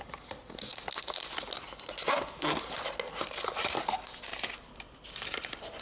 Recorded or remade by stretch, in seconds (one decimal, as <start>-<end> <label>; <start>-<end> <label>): 0.0-4.3 recorded; 4.3-5.8 remade